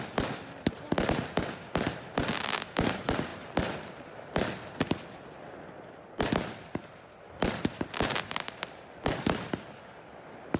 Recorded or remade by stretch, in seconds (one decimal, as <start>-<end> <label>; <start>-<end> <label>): 0.0-10.6 recorded